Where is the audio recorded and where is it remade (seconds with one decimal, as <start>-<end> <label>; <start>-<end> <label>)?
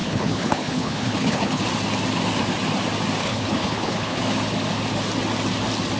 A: 0.0-1.6 remade; 1.6-3.2 recorded; 3.2-4.2 remade; 4.2-6.0 recorded